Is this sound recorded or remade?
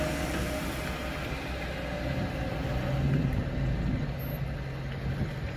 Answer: recorded